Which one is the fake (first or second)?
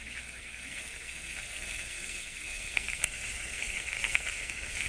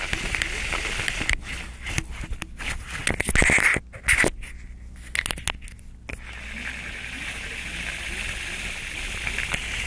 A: first